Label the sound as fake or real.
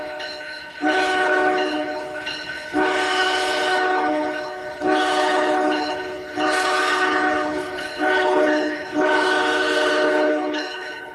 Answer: fake